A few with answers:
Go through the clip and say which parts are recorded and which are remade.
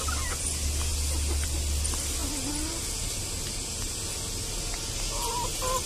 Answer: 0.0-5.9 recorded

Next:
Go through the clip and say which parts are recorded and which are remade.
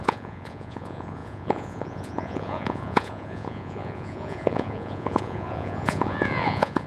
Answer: 0.0-6.9 remade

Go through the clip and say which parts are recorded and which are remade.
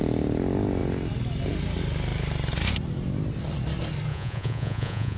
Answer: 0.0-4.1 recorded; 4.1-5.2 remade